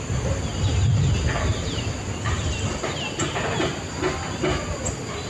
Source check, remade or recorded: recorded